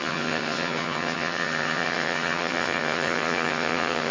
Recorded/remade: remade